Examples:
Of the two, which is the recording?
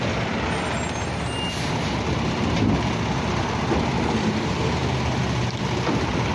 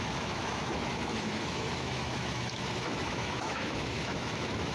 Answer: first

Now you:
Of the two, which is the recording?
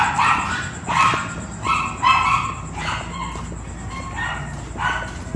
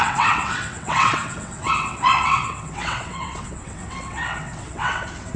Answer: first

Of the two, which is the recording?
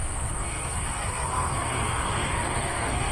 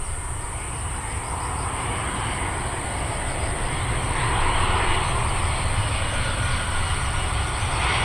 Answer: second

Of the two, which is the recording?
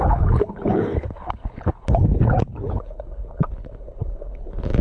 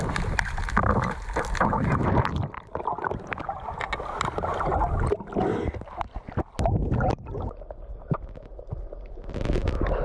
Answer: second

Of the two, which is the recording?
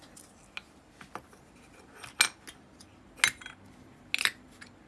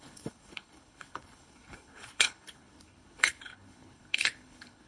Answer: first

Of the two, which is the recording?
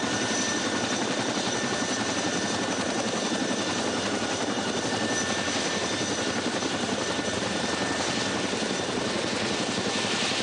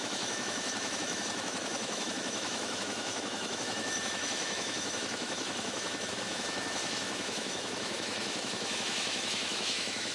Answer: first